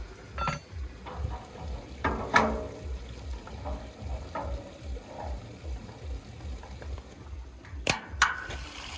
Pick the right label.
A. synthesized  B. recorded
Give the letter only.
B